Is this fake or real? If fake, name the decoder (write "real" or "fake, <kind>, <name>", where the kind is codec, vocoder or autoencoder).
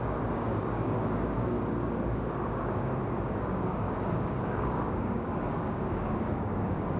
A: fake, codec, DAC